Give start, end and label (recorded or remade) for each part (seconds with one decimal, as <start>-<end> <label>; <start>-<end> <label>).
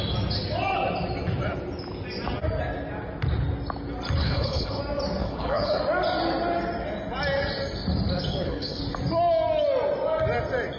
0.0-4.2 recorded; 4.2-4.8 remade; 4.8-5.2 recorded; 5.2-5.8 remade; 5.8-8.3 recorded; 8.3-8.8 remade; 8.8-10.8 recorded